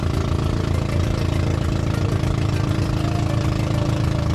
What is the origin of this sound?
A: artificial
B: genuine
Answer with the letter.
B